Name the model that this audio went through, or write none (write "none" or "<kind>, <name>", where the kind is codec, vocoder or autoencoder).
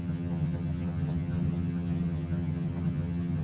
vocoder, HiFi-GAN